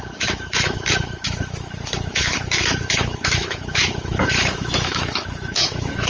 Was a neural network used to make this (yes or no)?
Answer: yes